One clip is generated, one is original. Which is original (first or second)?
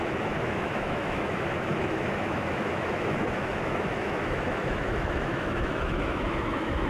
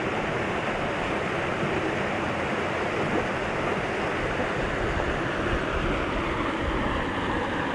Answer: second